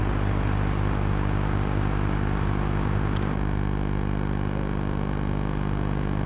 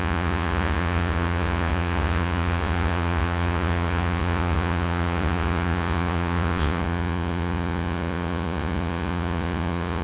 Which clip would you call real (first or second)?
first